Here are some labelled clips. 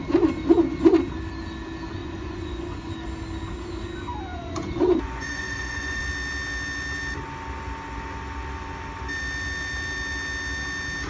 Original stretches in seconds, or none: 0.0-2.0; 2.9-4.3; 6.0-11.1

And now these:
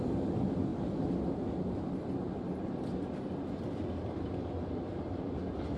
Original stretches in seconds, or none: 0.0-5.8

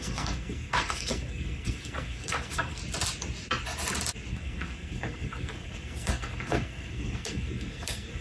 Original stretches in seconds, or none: 2.8-4.3